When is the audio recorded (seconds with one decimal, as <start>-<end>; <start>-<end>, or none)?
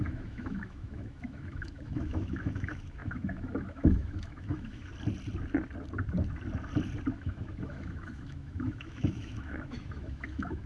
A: 4.9-7.1